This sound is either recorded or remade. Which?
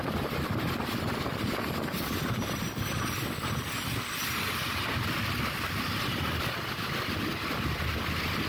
recorded